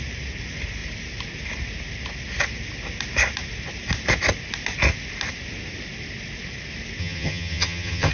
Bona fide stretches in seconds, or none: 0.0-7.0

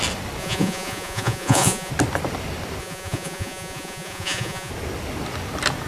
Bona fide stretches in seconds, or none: 0.0-0.4; 1.9-2.8; 4.7-5.9

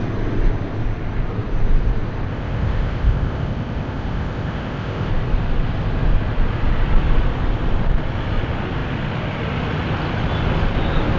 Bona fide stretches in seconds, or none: 0.0-2.3; 5.1-11.2

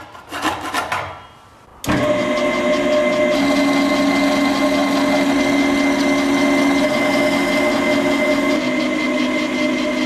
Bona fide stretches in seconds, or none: 0.0-10.1

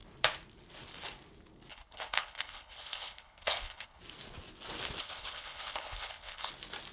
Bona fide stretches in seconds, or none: 0.0-1.7; 4.0-5.0; 6.5-6.9

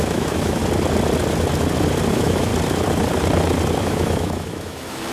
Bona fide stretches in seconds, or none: 0.6-2.1; 2.5-3.8